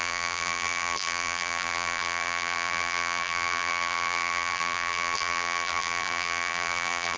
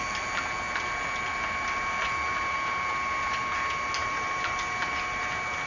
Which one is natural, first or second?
second